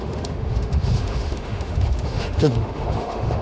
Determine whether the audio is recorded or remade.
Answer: remade